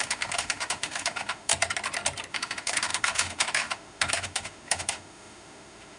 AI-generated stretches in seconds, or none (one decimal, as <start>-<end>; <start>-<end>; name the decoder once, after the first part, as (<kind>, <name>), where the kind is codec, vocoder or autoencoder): 0.0-1.5 (autoencoder, DAC-VAE); 2.3-6.0